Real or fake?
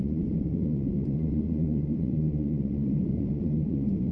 fake